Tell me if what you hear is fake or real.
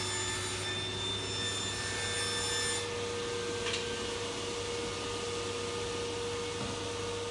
real